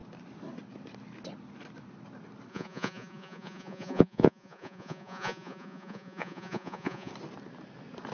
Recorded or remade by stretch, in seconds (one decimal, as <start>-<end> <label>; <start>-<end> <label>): 0.0-2.5 recorded; 2.5-7.1 remade; 7.1-8.1 recorded